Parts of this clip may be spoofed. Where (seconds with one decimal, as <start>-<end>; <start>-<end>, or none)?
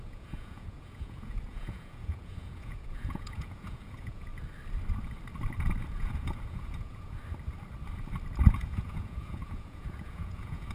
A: 0.0-4.3; 5.9-7.2; 8.5-10.7